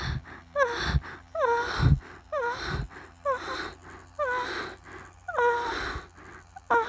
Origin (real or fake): real